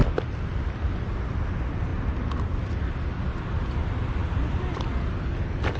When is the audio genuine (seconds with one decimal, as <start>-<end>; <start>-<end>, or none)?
0.9-5.8